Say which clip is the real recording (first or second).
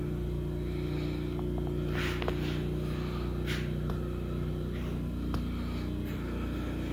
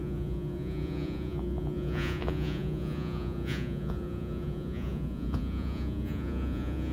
first